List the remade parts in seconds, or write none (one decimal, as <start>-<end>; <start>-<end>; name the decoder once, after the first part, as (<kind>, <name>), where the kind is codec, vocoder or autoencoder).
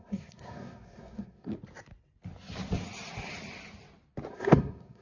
0.0-1.5 (codec, SNAC); 4.3-5.0